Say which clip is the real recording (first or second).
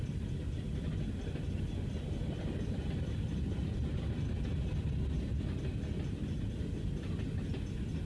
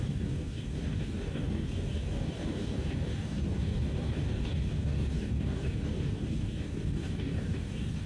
first